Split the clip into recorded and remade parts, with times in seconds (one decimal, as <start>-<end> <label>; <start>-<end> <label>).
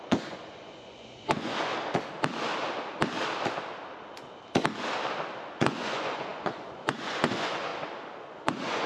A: 0.0-1.7 remade; 1.7-5.6 recorded; 5.6-7.7 remade; 7.7-8.2 recorded; 8.2-8.9 remade